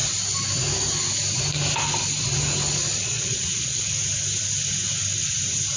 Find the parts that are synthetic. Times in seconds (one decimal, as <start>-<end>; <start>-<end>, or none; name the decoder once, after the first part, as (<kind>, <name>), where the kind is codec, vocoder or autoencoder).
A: 3.0-3.8 (vocoder, Vocos)